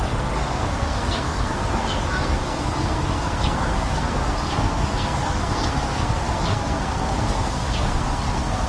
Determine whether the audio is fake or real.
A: fake